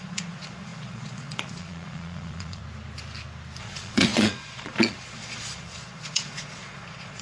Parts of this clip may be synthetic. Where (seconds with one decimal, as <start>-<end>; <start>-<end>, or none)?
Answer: 0.0-2.6; 3.6-7.2